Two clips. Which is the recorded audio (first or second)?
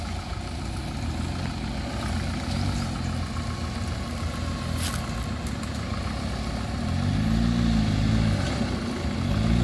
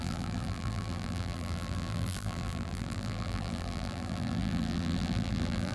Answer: first